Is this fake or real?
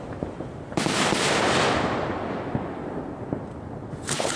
real